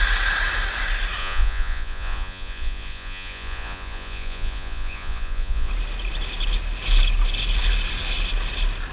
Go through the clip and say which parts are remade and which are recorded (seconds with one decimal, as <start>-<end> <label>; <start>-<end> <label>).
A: 0.0-1.2 recorded; 1.2-5.7 remade; 5.7-8.9 recorded